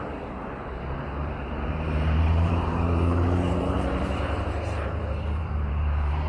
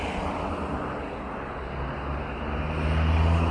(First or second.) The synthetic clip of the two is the first